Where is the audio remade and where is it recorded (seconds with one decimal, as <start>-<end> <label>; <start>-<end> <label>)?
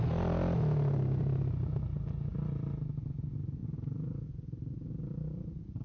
0.0-5.8 recorded